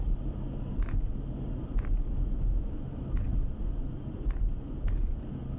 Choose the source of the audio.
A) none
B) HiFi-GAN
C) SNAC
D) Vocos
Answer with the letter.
A